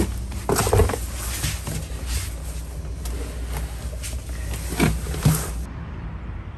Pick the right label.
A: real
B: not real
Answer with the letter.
A